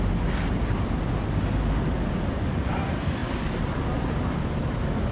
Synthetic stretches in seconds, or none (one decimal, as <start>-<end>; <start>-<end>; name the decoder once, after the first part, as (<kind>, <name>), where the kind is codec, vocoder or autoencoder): none